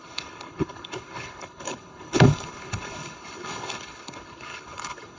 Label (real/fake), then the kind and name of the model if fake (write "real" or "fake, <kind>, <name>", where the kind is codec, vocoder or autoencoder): fake, codec, HILCodec